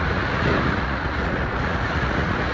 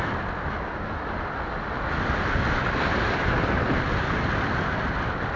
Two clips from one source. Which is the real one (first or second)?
second